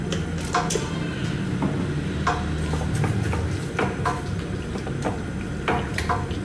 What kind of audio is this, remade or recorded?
recorded